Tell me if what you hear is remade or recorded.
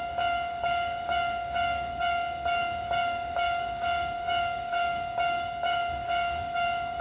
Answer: remade